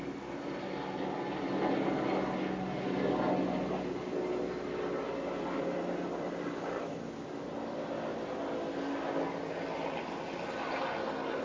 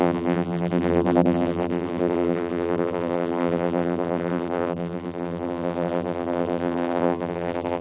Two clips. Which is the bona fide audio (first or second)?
first